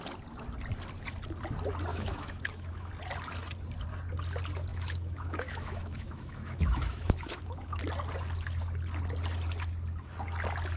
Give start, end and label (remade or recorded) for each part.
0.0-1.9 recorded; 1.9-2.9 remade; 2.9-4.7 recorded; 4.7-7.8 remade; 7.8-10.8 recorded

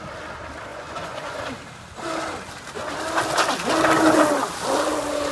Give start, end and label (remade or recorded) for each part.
0.0-0.7 recorded; 0.7-1.4 remade; 1.4-5.3 recorded

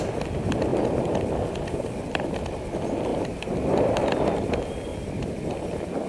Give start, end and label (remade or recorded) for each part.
0.0-3.1 recorded; 3.1-4.1 remade; 4.1-4.9 recorded; 4.9-5.4 remade; 5.4-6.1 recorded

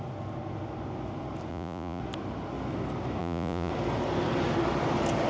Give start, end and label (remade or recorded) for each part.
0.0-1.5 recorded; 1.5-2.0 remade; 2.0-3.2 recorded; 3.2-3.7 remade; 3.7-5.3 recorded

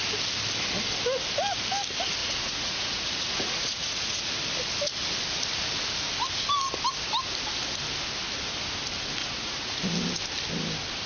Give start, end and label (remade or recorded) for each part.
0.0-2.2 recorded; 2.2-4.3 remade; 4.3-9.2 recorded; 9.2-9.8 remade; 9.8-11.1 recorded

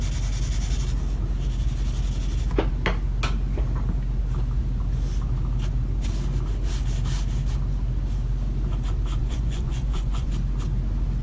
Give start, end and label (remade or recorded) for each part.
0.0-9.2 recorded; 9.2-10.3 remade; 10.3-11.2 recorded

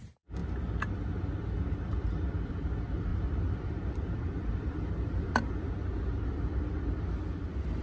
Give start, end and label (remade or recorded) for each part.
0.0-3.1 recorded; 3.1-5.7 remade; 5.7-7.8 recorded